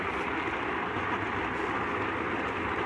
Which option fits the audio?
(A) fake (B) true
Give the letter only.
B